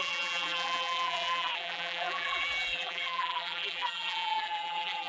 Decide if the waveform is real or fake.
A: fake